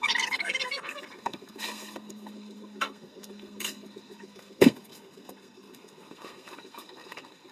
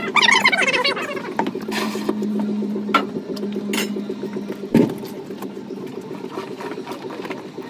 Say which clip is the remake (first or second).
first